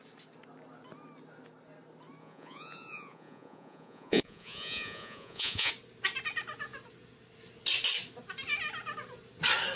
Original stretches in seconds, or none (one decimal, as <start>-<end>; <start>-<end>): 0.0-2.2; 5.7-9.8